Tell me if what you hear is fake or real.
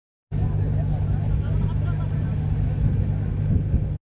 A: real